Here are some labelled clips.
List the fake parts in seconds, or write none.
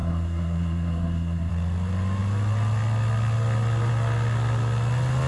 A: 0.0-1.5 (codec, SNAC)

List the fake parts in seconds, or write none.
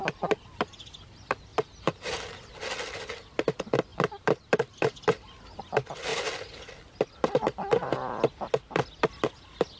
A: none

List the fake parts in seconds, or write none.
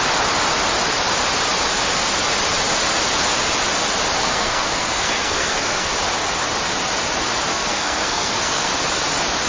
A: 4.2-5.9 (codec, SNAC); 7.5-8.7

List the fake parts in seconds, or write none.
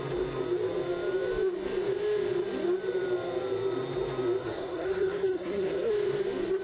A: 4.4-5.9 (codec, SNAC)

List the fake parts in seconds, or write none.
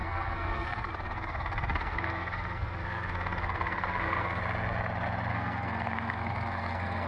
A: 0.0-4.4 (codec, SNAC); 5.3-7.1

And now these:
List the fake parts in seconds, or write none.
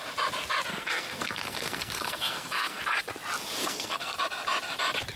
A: 0.7-2.8 (codec, SNAC); 3.6-4.2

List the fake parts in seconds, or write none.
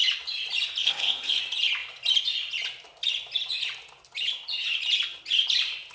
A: 0.8-1.4 (codec, SNAC)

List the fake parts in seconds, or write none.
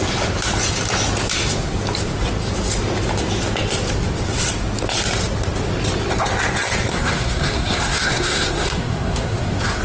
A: 6.9-9.8 (codec, SNAC)